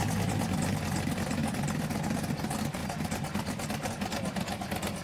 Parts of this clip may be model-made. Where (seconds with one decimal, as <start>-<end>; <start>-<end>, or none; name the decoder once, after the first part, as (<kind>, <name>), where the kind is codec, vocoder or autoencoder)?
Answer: 1.4-2.2 (vocoder, BigVGAN v2); 2.8-3.9